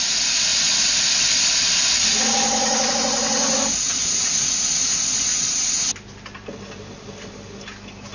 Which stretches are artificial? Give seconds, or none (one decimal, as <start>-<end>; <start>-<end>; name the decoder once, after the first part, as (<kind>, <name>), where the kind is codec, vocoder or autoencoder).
none